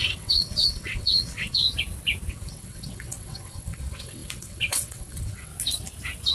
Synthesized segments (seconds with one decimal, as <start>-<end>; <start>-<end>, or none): 0.0-1.6; 2.3-5.5